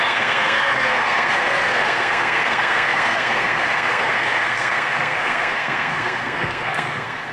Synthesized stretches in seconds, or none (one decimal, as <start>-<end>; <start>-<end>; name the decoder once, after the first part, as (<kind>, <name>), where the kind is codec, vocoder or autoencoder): 0.0-7.3 (codec, SNAC)